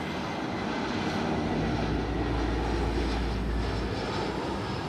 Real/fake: real